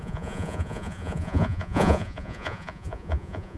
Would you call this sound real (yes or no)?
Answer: no